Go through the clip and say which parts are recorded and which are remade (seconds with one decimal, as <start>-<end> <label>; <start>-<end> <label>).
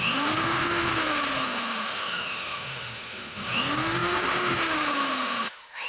0.0-5.9 remade